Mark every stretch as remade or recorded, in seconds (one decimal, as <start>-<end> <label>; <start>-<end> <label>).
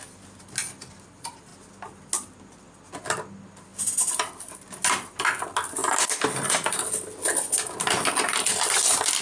0.0-9.2 recorded